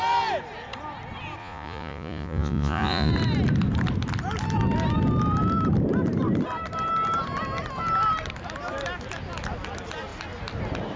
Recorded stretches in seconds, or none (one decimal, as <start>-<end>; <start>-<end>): 0.0-1.4; 3.1-11.0